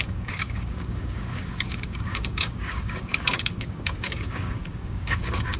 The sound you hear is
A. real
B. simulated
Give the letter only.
B